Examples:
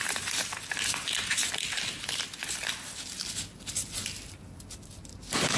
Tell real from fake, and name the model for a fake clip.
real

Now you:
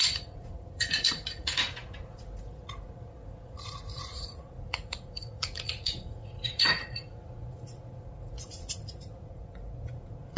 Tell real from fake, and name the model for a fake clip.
fake, vocoder, Vocos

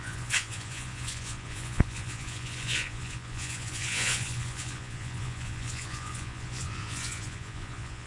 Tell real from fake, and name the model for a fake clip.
fake, vocoder, Vocos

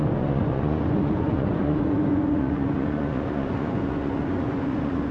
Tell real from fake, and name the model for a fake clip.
fake, vocoder, Vocos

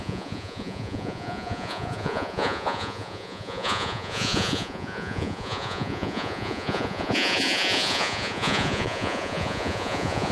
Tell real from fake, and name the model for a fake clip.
fake, vocoder, Vocos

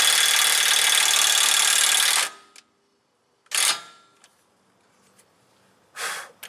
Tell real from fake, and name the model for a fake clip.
real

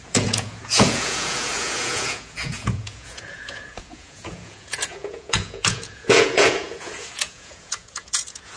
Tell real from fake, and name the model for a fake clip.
fake, vocoder, Vocos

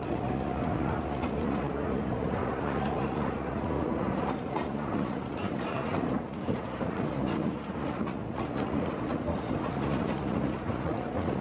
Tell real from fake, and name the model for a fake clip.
fake, vocoder, Vocos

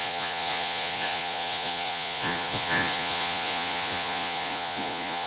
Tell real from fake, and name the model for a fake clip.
fake, vocoder, Vocos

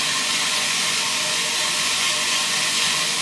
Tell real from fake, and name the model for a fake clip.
fake, vocoder, Vocos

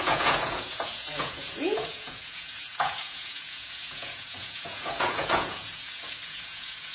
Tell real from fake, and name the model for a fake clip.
fake, vocoder, Vocos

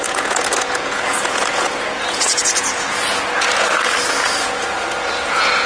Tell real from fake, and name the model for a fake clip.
fake, vocoder, Vocos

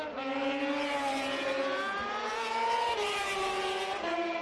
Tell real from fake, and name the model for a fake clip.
real